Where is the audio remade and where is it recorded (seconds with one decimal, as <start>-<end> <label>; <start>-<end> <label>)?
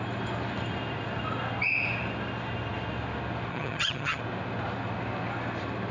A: 0.0-3.5 recorded; 3.5-4.2 remade; 4.2-5.9 recorded